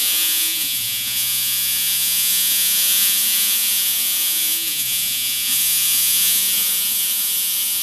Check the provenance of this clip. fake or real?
fake